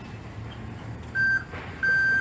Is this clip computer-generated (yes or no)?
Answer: no